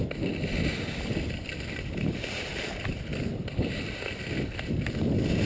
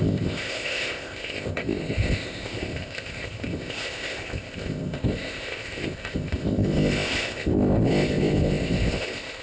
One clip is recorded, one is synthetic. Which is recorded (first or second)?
first